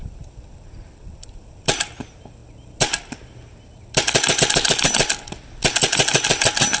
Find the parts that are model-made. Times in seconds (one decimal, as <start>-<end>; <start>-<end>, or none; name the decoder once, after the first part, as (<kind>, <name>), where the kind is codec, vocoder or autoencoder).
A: none